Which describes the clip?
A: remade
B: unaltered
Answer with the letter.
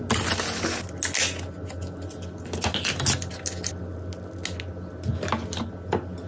B